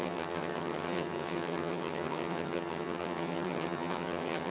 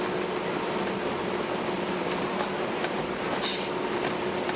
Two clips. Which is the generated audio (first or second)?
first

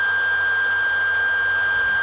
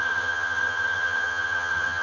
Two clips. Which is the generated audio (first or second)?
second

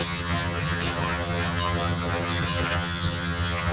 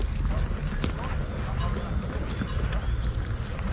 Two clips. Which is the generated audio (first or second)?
first